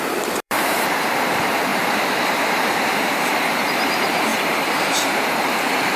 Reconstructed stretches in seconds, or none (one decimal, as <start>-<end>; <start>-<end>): 0.0-6.0